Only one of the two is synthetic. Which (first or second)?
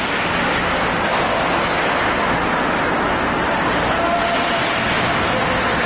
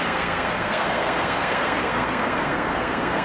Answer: second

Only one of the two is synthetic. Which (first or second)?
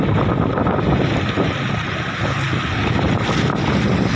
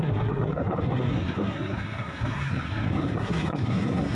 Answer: second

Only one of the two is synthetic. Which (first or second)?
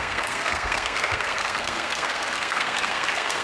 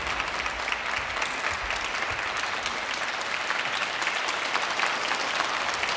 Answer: first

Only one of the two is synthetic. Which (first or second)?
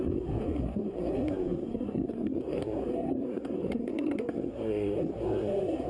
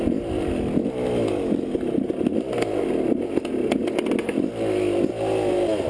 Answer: first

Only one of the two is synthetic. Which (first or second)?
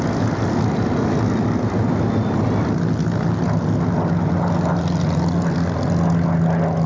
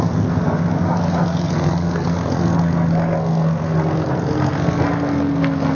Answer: second